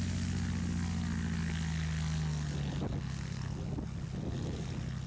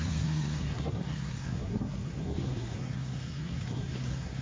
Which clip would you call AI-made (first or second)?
second